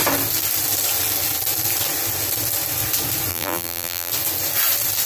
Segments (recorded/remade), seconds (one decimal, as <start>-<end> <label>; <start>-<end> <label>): 0.0-3.3 recorded; 3.3-4.1 remade; 4.1-5.1 recorded